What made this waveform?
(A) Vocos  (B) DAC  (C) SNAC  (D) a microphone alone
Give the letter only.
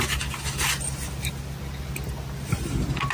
D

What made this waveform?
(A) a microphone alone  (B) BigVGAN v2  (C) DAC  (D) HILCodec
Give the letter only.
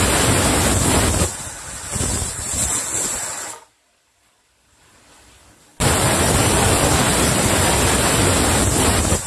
A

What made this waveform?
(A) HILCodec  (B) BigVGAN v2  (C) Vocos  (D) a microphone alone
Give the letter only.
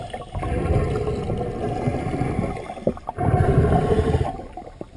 D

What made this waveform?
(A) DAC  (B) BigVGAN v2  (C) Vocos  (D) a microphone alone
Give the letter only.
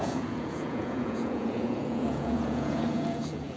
C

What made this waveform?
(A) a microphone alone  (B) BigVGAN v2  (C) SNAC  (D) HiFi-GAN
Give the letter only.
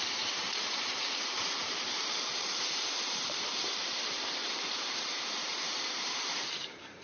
B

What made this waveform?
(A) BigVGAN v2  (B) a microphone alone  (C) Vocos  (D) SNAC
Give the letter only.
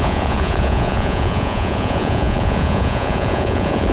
C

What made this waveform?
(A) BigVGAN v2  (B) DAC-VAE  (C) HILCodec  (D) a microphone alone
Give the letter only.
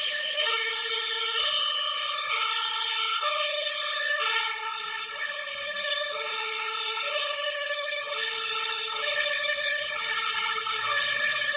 C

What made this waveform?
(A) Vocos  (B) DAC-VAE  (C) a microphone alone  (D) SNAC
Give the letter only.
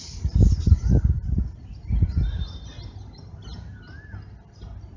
C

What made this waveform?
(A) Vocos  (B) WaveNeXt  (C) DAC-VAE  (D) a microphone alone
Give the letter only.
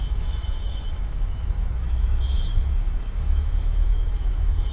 C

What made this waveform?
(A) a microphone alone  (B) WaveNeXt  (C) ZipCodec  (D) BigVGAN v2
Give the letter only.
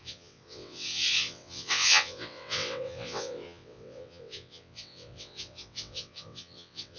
B